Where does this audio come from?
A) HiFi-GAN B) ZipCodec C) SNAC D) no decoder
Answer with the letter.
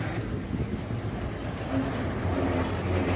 D